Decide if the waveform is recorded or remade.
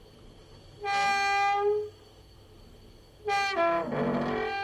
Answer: recorded